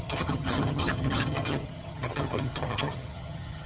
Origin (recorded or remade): remade